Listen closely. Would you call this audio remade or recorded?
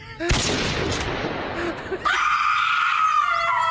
recorded